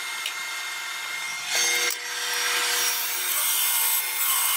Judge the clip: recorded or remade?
recorded